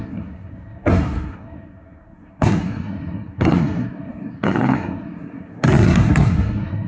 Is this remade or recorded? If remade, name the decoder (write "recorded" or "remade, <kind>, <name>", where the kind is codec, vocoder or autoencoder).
remade, codec, SNAC